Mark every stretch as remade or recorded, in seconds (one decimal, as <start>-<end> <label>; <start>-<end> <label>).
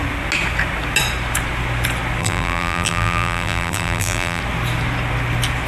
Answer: 0.0-2.2 recorded; 2.2-4.4 remade; 4.4-5.7 recorded